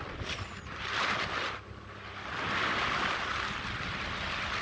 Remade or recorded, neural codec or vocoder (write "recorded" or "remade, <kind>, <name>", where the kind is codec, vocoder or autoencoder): recorded